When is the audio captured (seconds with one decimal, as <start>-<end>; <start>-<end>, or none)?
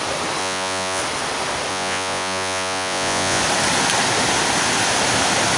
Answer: 0.0-0.4; 1.0-1.7; 3.4-5.6